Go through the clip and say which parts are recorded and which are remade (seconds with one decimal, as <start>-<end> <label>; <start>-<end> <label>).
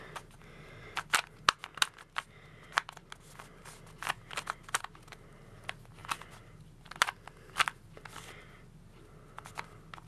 0.0-10.1 recorded